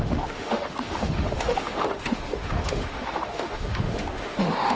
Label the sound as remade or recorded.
remade